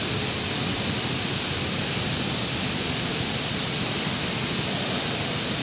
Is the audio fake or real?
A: real